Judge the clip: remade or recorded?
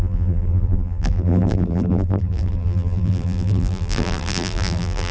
remade